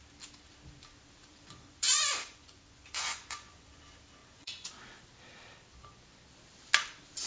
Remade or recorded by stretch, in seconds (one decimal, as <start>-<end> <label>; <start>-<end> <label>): 0.0-1.3 recorded; 1.3-3.8 remade; 3.8-4.2 recorded; 4.2-4.7 remade; 4.7-7.3 recorded